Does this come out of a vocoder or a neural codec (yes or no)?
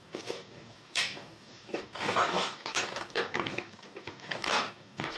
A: yes